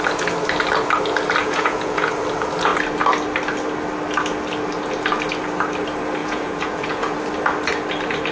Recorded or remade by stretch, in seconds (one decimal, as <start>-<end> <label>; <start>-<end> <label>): 0.0-1.4 recorded; 1.4-2.1 remade; 2.1-6.2 recorded; 6.2-7.2 remade; 7.2-8.3 recorded